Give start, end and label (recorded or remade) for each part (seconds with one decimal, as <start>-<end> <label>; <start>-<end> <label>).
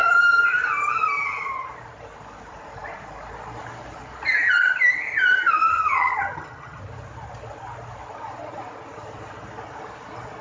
0.0-5.7 recorded; 5.7-6.8 remade; 6.8-10.4 recorded